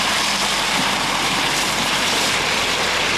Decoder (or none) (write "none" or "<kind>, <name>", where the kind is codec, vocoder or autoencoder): none